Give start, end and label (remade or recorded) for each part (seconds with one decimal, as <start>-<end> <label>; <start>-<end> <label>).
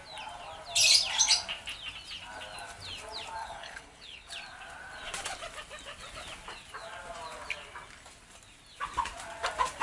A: 0.0-3.4 recorded; 3.4-4.3 remade; 4.3-9.8 recorded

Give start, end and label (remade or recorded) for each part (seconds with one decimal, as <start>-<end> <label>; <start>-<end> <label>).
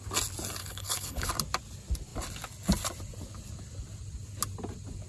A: 0.0-0.6 recorded; 0.6-1.3 remade; 1.3-5.1 recorded